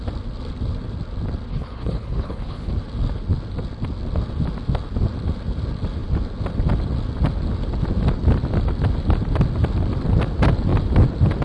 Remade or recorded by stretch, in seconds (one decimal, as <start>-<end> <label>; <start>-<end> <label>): 0.0-1.5 recorded; 1.5-2.7 remade; 2.7-11.4 recorded